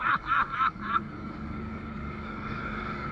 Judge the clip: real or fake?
fake